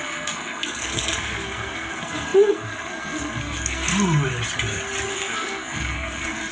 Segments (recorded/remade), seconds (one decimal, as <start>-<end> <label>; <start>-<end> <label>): 0.0-3.9 remade; 3.9-5.1 recorded; 5.1-6.5 remade